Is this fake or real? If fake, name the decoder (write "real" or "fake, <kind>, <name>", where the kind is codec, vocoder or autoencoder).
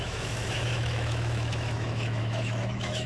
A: fake, autoencoder, DAC-VAE